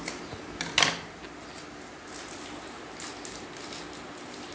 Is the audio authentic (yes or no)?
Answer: yes